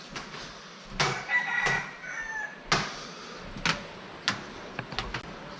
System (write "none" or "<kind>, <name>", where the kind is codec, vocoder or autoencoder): none